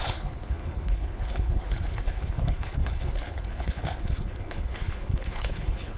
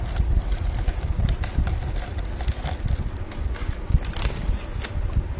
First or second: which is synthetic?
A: first